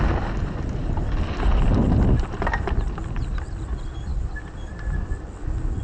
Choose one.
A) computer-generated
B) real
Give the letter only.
B